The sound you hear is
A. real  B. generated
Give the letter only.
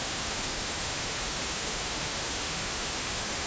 B